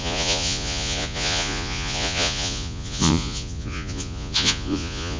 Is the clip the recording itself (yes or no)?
no